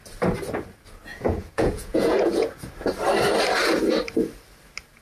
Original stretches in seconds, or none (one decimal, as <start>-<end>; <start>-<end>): 0.0-1.1; 2.7-5.0